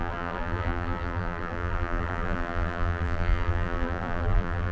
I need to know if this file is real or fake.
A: fake